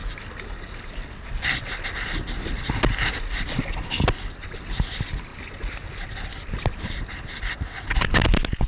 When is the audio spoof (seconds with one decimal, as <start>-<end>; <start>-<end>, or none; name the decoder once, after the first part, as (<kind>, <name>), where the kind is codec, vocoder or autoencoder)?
none